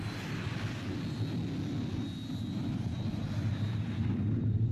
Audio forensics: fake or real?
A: real